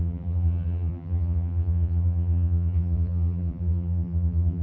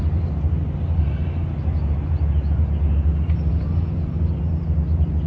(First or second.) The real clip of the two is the second